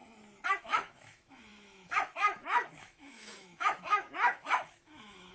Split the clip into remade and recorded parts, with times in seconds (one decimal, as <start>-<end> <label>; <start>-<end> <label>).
0.0-0.6 recorded; 0.6-5.3 remade

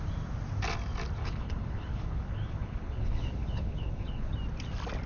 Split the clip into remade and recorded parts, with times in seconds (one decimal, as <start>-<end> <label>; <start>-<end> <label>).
0.0-1.2 recorded; 1.2-4.3 remade; 4.3-5.1 recorded

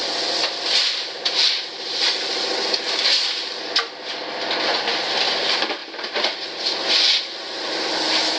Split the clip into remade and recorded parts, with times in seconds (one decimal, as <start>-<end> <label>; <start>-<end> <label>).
0.0-1.2 remade; 1.2-5.8 recorded; 5.8-6.9 remade; 6.9-8.4 recorded

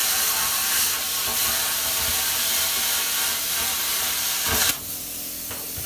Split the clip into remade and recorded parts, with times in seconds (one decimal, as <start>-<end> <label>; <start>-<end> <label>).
0.0-3.9 recorded; 3.9-4.7 remade; 4.7-5.9 recorded

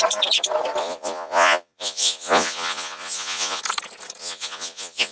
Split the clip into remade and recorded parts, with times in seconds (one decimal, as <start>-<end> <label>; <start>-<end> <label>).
0.0-0.8 recorded; 0.8-3.6 remade; 3.6-4.2 recorded; 4.2-5.1 remade